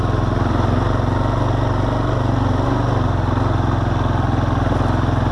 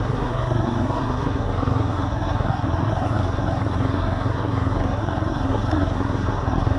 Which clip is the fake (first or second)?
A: second